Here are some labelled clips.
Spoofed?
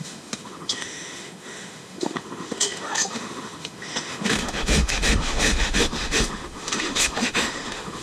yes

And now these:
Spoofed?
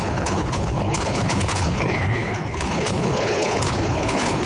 yes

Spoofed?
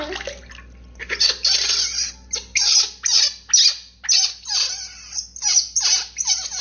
no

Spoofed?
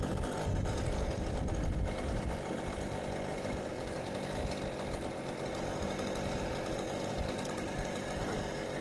no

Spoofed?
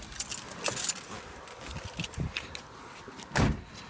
no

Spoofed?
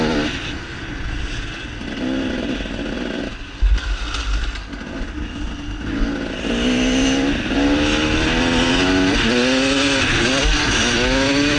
no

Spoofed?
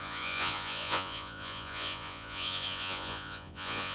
yes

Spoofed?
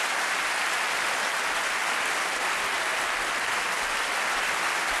no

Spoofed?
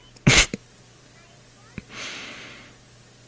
no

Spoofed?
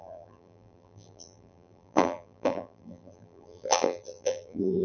yes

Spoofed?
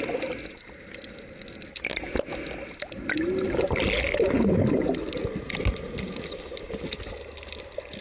no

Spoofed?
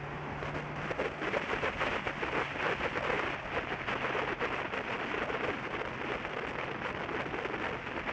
no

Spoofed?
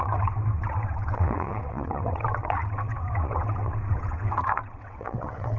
yes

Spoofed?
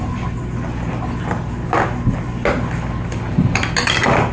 no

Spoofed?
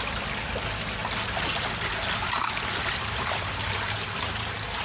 no